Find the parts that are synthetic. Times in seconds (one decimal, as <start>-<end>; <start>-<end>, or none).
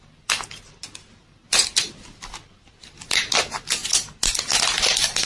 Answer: none